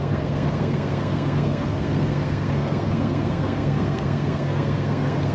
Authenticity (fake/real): fake